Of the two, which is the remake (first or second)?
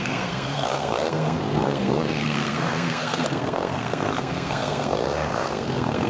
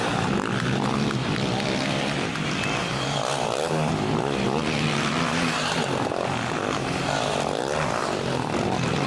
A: first